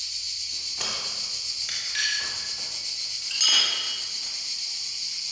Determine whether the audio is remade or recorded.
recorded